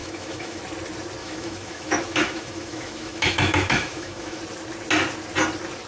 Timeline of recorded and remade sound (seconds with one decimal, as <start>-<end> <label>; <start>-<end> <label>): 0.0-0.6 remade; 0.6-1.2 recorded; 1.2-4.4 remade; 4.4-5.9 recorded

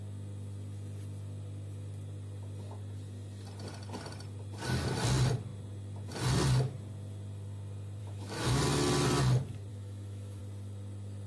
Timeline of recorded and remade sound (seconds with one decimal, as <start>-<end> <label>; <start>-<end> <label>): 0.0-8.0 recorded; 8.0-8.6 remade; 8.6-9.7 recorded; 9.7-10.4 remade; 10.4-11.3 recorded

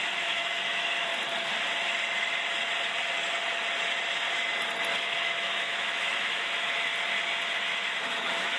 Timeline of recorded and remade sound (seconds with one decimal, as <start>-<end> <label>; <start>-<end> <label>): 0.0-1.1 remade; 1.1-5.0 recorded; 5.0-6.9 remade; 6.9-7.6 recorded; 7.6-8.6 remade

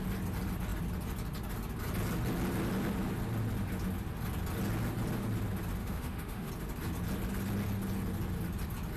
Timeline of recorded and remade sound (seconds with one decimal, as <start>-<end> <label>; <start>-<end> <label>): 0.0-5.8 recorded; 5.8-6.5 remade; 6.5-9.0 recorded